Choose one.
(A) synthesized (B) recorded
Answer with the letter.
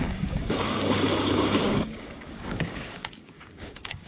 A